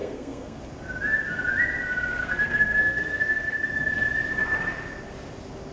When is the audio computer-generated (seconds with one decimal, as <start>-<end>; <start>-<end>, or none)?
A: 0.0-0.6; 2.2-3.7